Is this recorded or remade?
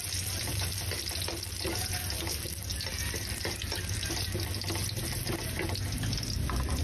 recorded